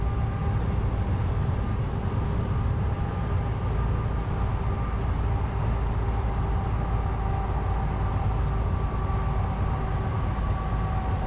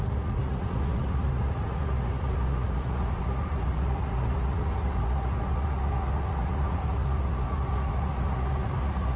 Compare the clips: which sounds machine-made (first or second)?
second